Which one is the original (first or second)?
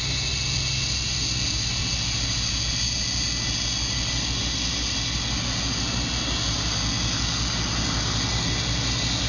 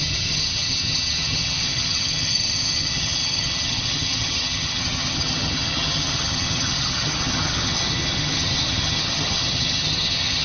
first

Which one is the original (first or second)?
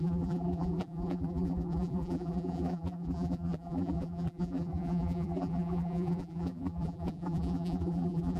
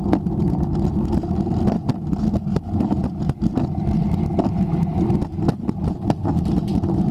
second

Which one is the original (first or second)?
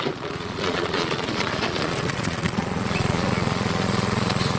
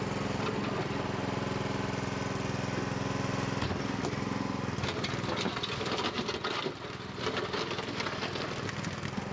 second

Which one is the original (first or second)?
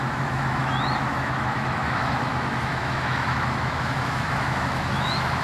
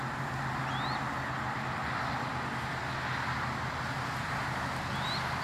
second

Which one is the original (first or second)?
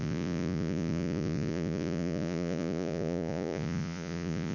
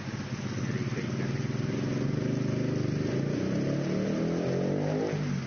second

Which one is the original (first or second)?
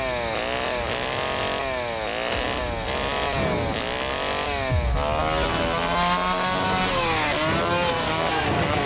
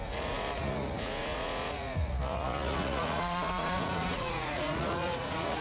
first